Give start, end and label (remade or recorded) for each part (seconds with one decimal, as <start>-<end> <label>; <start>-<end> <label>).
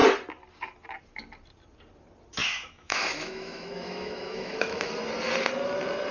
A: 0.0-2.4 recorded; 2.4-4.9 remade; 4.9-6.1 recorded